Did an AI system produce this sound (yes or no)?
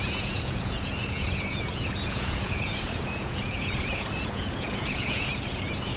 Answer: yes